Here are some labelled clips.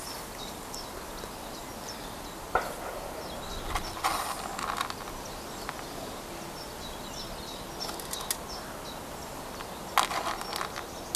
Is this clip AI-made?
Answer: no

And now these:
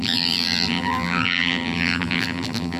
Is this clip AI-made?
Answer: yes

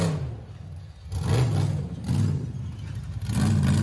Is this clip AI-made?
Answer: no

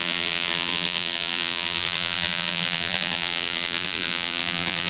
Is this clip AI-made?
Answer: yes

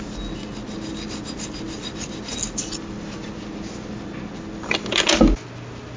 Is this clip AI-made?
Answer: no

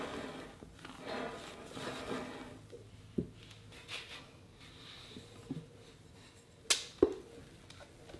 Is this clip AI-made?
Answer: no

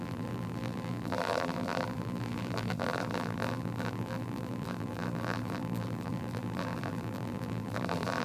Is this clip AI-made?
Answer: yes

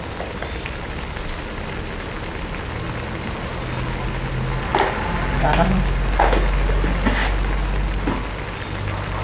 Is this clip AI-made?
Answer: no